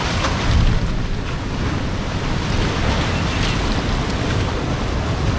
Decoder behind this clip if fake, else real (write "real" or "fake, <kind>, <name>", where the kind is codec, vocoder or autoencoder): real